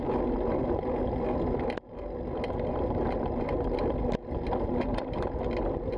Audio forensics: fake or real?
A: real